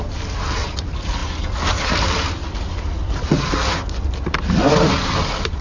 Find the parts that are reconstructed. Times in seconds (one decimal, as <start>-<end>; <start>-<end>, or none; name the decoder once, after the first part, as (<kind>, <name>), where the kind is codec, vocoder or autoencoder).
none